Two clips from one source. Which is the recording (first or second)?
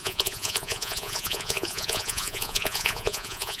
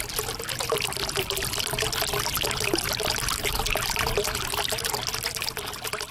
second